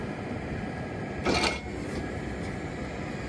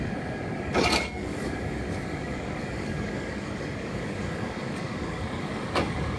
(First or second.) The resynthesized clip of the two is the second